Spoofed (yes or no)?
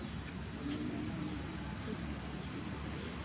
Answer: no